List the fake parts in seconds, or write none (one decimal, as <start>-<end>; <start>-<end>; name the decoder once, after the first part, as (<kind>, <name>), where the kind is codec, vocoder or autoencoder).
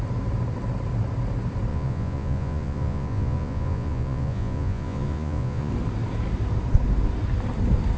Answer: 1.7-5.7 (vocoder, Vocos)